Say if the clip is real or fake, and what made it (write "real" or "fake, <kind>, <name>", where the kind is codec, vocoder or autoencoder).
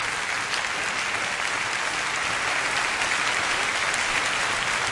real